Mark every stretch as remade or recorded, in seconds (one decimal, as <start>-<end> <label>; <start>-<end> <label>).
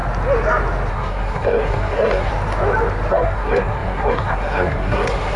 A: 0.0-0.9 recorded; 0.9-2.3 remade; 2.3-3.1 recorded; 3.1-5.4 remade